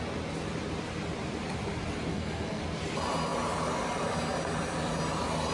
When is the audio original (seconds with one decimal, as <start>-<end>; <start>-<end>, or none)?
0.0-2.1; 2.6-5.5

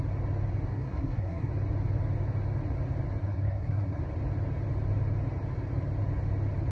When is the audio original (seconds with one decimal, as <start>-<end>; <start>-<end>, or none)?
0.0-0.7; 1.5-3.2; 4.0-6.7

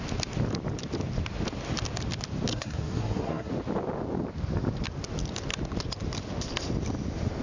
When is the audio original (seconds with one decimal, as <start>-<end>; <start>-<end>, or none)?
0.0-2.5; 3.5-7.4

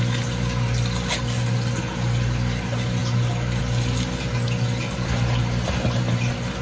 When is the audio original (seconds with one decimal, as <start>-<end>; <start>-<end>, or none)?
0.0-6.6

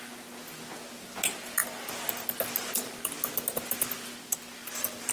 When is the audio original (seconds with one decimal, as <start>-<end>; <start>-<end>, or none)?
0.0-5.1

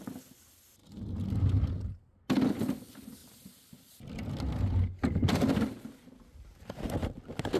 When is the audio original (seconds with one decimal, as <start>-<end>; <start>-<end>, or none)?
0.0-7.6

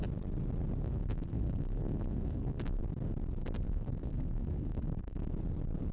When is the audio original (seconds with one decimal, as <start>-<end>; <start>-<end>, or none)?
0.0-0.8; 2.8-3.4; 5.3-5.9

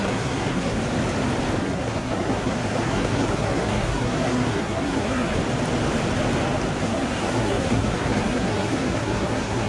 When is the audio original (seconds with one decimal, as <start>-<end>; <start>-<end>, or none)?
0.7-1.6; 5.4-6.8